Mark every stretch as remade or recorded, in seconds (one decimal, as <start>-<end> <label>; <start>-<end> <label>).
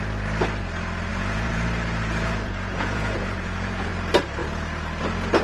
0.0-1.1 recorded; 1.1-3.9 remade; 3.9-5.4 recorded